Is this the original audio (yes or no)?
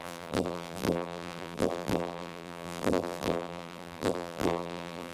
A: no